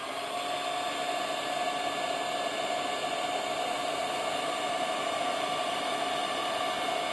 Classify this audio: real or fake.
real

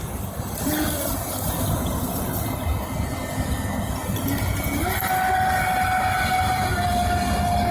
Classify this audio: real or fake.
real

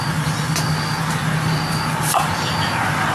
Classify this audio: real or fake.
real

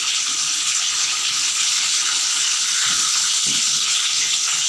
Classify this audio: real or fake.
fake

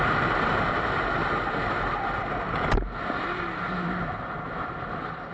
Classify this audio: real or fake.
real